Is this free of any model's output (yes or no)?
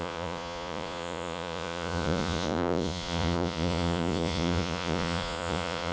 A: no